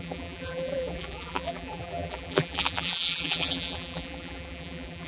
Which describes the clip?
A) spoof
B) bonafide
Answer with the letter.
A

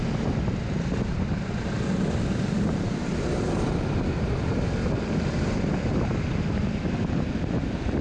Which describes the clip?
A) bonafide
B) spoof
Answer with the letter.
A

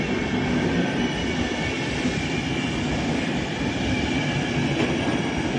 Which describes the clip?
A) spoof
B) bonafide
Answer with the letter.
B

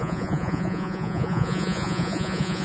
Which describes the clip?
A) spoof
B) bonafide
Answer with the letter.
A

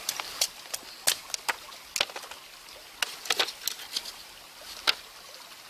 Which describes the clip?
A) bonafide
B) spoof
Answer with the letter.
A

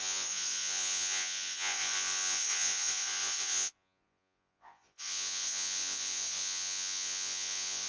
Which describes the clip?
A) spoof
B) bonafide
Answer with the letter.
A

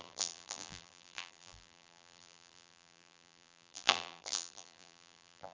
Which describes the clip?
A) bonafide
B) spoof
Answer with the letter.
B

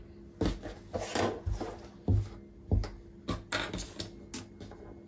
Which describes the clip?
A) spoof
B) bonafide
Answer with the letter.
B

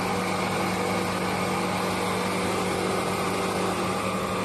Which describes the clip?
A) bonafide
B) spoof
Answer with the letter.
A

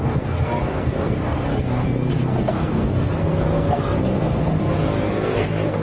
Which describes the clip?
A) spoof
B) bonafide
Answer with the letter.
A